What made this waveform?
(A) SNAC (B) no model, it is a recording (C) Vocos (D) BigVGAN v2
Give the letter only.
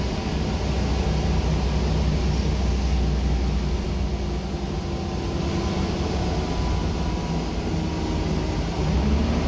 B